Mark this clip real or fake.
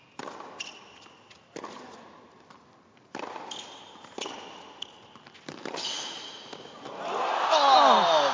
real